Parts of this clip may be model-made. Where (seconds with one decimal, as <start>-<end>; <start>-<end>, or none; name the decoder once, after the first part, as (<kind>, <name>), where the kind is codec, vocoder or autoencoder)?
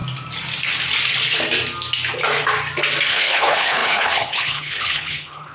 3.1-5.5 (codec, HILCodec)